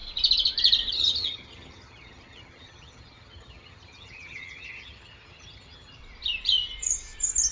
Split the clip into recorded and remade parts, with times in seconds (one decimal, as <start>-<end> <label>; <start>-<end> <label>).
0.0-0.9 recorded; 0.9-6.0 remade; 6.0-7.5 recorded